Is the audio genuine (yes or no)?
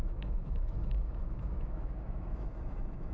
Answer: no